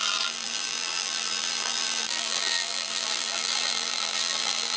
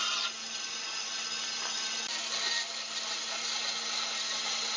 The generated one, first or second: first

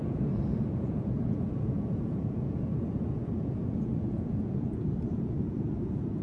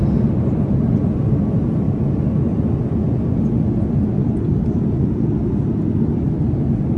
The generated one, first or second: first